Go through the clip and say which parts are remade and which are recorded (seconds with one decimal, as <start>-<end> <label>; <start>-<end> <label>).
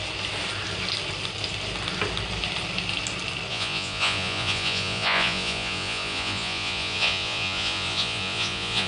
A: 0.0-3.5 recorded; 3.5-8.9 remade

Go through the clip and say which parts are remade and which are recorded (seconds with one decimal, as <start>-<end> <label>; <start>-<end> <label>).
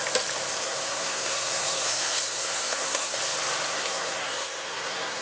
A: 0.0-0.6 recorded; 0.6-3.2 remade; 3.2-3.7 recorded; 3.7-5.2 remade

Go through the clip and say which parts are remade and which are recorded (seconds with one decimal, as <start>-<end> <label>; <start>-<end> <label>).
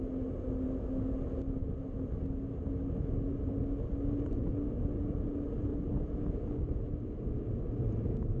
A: 0.0-5.7 recorded; 5.7-6.2 remade; 6.2-8.4 recorded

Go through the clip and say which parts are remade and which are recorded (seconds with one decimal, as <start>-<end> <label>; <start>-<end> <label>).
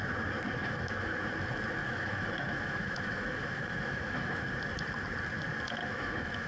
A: 0.0-0.6 recorded; 0.6-1.2 remade; 1.2-1.8 recorded; 1.8-4.4 remade; 4.4-5.8 recorded; 5.8-6.5 remade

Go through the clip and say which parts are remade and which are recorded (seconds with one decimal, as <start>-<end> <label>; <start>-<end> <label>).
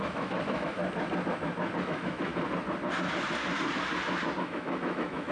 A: 0.0-0.8 remade; 0.8-1.8 recorded; 1.8-2.3 remade; 2.3-4.4 recorded; 4.4-5.3 remade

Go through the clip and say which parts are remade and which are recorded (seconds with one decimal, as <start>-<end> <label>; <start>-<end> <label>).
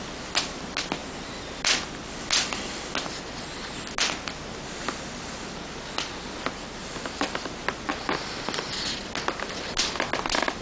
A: 0.0-10.6 recorded